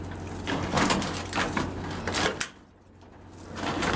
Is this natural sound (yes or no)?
yes